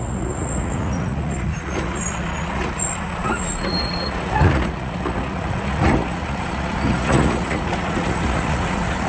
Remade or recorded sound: remade